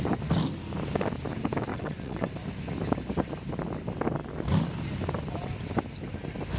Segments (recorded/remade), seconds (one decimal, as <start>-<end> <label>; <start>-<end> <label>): 0.0-1.7 recorded; 1.7-2.3 remade; 2.3-6.6 recorded